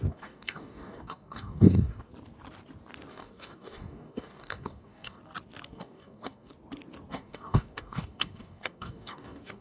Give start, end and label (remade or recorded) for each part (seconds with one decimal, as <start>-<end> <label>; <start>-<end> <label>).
0.0-2.1 remade; 2.1-3.1 recorded; 3.1-5.2 remade; 5.2-5.7 recorded; 5.7-6.5 remade; 6.5-7.1 recorded; 7.1-9.6 remade